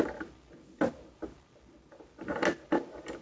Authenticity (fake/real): real